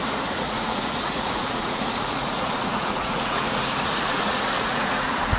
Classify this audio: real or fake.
fake